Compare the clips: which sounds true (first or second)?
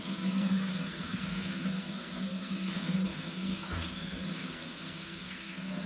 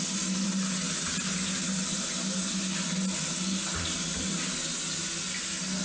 second